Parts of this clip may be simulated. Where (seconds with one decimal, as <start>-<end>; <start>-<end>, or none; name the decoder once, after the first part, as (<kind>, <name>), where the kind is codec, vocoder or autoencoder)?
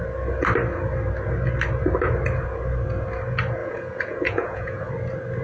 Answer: 3.6-4.9 (vocoder, Vocos)